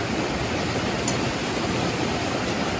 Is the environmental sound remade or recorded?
recorded